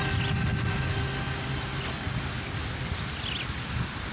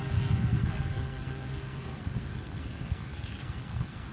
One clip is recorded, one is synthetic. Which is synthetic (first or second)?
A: second